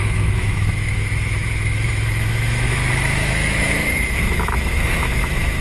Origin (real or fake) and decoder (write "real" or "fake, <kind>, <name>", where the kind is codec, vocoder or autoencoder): fake, autoencoder, DAC-VAE